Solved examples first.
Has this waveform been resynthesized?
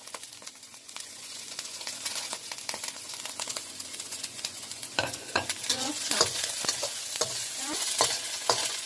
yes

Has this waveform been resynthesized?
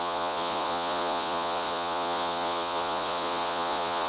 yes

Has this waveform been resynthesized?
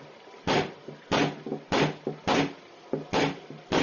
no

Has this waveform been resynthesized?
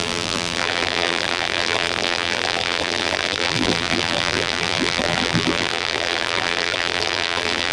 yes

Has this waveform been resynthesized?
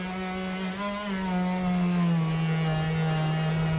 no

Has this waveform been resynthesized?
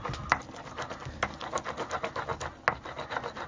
no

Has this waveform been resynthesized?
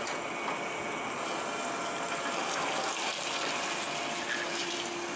no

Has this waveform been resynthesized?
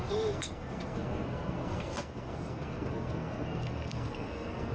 yes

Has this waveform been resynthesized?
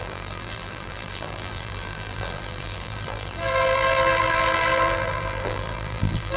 yes